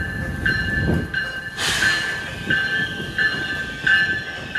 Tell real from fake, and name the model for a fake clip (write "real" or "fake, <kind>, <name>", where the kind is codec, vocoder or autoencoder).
real